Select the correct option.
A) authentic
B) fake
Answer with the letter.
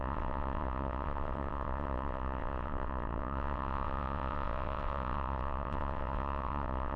B